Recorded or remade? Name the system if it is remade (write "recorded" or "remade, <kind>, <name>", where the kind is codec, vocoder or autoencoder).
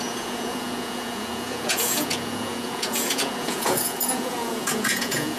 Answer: remade, vocoder, Vocos